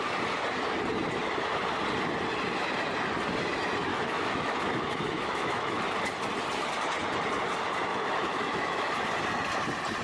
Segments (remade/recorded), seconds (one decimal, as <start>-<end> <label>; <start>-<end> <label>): 0.0-3.9 recorded; 3.9-5.8 remade; 5.8-7.9 recorded; 7.9-8.9 remade; 8.9-10.0 recorded

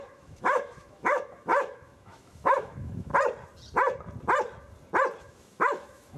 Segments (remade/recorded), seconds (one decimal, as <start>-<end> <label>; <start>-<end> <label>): 0.0-3.1 remade; 3.1-5.2 recorded; 5.2-6.2 remade

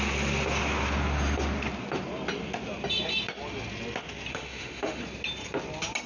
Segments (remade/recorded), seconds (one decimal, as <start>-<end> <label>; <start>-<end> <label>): 0.0-4.3 recorded; 4.3-5.0 remade; 5.0-6.1 recorded